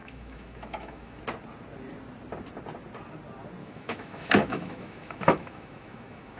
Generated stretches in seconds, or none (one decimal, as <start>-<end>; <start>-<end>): 0.0-1.2; 3.6-6.4